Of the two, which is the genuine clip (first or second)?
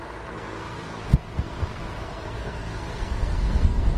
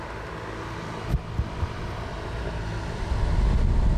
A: second